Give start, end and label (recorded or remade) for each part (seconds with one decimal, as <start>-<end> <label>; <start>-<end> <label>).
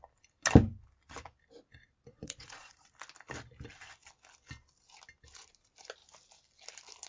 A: 0.0-2.1 recorded; 2.1-2.9 remade; 2.9-7.1 recorded